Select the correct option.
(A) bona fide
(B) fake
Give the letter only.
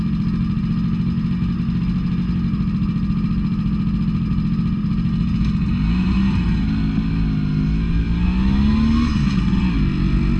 A